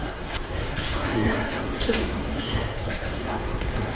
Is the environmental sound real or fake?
fake